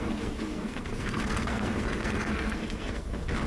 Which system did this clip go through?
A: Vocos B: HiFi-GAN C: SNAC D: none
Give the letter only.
C